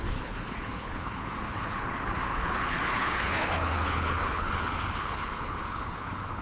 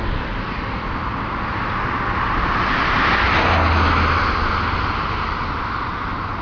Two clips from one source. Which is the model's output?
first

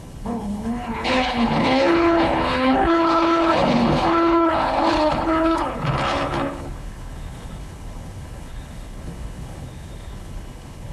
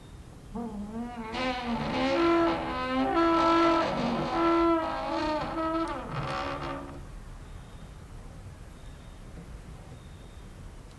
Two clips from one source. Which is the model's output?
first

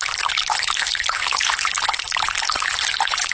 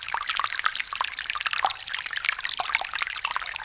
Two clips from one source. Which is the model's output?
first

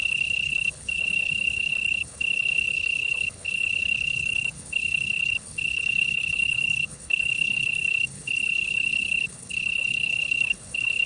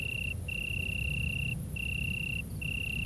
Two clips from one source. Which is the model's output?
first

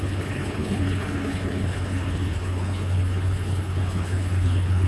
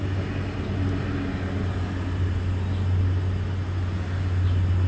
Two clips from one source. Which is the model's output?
first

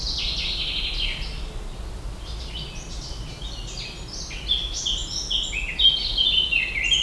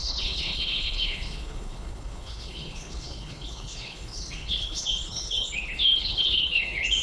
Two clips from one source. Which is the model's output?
second